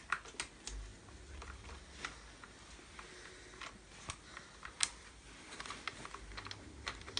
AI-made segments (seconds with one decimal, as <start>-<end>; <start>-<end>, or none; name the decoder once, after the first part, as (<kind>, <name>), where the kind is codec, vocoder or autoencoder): none